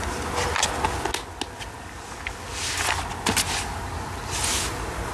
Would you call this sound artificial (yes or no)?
no